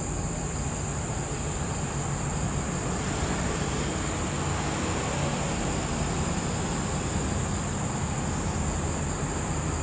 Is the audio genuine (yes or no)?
yes